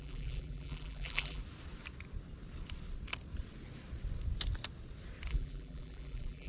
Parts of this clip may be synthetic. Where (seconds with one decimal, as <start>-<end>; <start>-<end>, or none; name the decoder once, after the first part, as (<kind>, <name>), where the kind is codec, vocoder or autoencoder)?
0.0-1.4 (vocoder, BigVGAN v2); 5.3-6.5